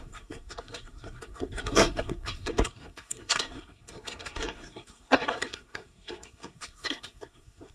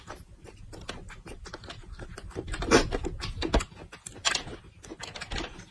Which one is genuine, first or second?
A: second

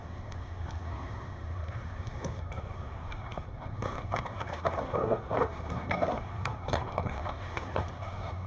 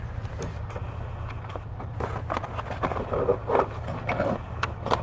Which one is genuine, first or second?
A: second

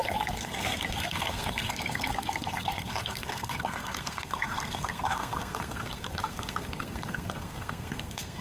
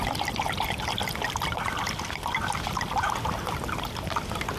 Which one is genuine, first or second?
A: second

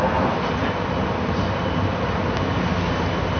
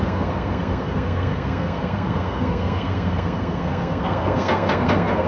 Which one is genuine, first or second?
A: first